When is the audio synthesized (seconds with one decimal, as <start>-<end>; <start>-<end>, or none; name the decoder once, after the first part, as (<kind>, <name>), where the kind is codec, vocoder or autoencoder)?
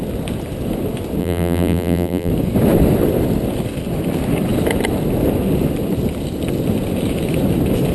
1.2-2.3 (vocoder, BigVGAN v2)